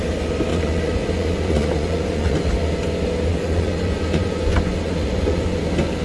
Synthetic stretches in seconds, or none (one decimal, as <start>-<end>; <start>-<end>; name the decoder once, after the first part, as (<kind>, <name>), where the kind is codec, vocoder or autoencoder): 0.5-2.5 (vocoder, Vocos); 3.3-5.6